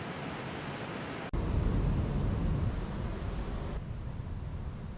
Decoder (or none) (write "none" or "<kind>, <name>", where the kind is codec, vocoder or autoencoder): none